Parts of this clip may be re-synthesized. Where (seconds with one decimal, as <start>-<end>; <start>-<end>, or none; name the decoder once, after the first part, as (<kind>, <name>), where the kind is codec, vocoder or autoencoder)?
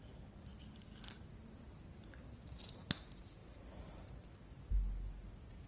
none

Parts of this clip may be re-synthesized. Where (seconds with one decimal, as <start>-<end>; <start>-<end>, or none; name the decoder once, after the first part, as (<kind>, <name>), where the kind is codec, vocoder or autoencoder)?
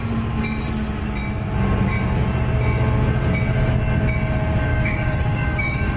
4.7-6.0 (codec, DAC)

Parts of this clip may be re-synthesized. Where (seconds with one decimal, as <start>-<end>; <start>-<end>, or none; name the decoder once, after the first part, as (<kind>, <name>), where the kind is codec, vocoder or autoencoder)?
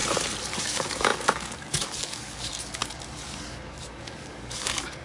0.6-5.0 (codec, DAC)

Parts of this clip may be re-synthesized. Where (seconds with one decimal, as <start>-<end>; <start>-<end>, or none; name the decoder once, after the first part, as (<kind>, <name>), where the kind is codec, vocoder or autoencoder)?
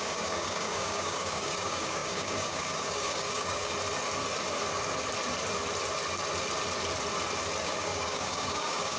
0.0-3.7 (codec, DAC); 7.6-9.0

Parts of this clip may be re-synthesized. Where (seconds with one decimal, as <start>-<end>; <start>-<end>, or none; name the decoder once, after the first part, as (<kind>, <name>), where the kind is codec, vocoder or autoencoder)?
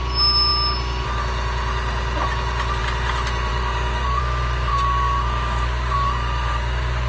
3.5-4.2 (codec, DAC); 4.7-7.1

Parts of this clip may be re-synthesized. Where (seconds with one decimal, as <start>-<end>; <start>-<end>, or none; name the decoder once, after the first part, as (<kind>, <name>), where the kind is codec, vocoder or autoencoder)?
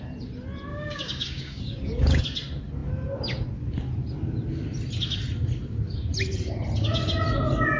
0.7-2.2 (codec, DAC)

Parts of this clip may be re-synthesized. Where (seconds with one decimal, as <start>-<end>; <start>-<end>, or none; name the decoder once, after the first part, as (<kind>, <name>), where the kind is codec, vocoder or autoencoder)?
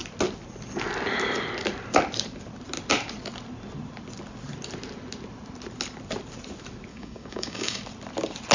6.9-7.8 (codec, DAC)